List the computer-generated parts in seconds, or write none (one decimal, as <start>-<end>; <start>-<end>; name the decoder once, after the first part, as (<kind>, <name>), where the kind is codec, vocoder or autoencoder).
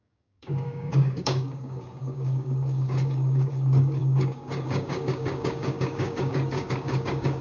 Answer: 0.0-7.4 (codec, DAC)